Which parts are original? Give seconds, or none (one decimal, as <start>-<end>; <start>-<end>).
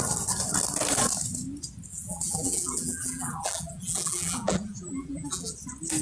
0.0-1.9; 5.5-6.0